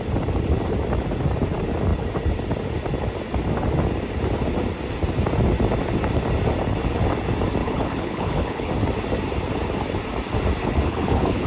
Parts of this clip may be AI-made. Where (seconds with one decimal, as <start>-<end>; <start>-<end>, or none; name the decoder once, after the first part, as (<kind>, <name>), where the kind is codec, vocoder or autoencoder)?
7.6-8.7 (codec, HILCodec); 10.6-11.5